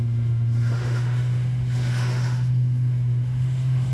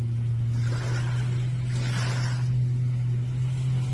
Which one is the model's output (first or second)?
first